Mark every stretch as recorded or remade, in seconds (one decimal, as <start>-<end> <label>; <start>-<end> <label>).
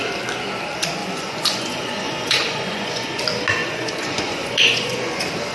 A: 0.0-1.0 recorded; 1.0-3.2 remade; 3.2-3.6 recorded; 3.6-5.1 remade; 5.1-5.5 recorded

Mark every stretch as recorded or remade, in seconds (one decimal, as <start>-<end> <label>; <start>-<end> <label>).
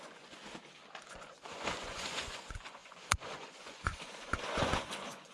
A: 0.0-0.4 remade; 0.4-1.1 recorded; 1.1-5.3 remade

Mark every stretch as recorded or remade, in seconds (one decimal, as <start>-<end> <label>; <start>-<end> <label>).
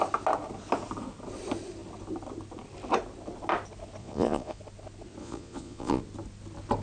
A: 0.0-4.0 recorded; 4.0-4.6 remade; 4.6-5.2 recorded; 5.2-6.0 remade; 6.0-6.8 recorded